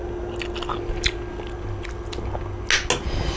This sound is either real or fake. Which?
real